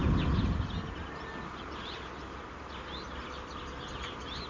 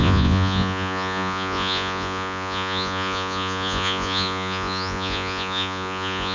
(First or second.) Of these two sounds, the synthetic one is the second